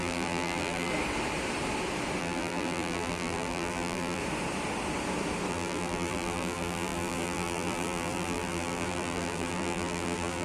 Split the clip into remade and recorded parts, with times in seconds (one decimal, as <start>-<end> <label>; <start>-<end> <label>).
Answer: 0.0-0.9 remade; 0.9-2.2 recorded; 2.2-4.2 remade; 4.2-5.5 recorded; 5.5-10.4 remade